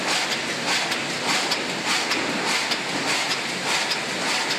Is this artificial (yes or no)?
no